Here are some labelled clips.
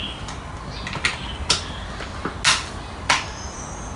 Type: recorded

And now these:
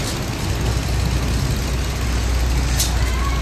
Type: recorded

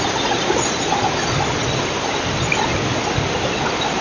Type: recorded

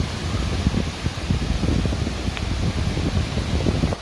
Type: recorded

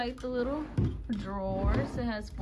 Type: recorded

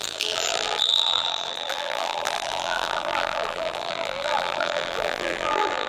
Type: remade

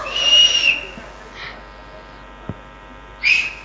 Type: recorded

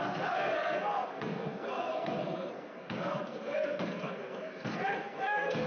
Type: remade